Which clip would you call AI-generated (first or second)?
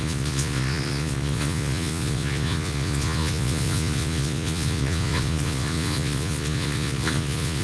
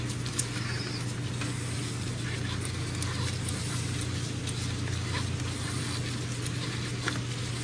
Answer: first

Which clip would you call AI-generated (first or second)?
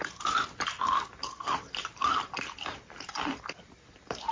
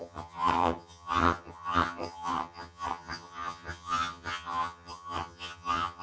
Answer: second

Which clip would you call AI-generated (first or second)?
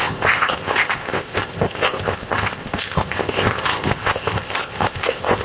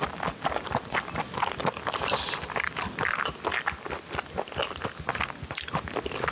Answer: first